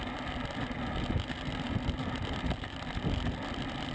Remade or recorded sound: recorded